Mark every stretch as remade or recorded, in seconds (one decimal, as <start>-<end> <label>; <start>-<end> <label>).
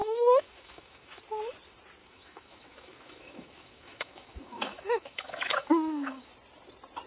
0.0-1.2 remade; 1.2-2.0 recorded; 2.0-6.3 remade; 6.3-7.1 recorded